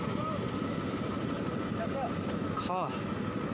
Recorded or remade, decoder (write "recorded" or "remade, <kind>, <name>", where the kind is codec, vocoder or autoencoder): recorded